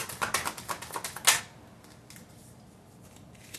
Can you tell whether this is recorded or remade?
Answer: recorded